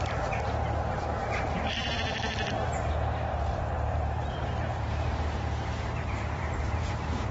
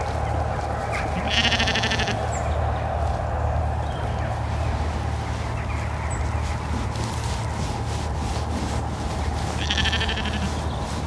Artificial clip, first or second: first